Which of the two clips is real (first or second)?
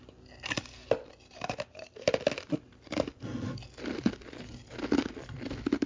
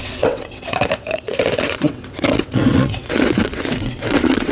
first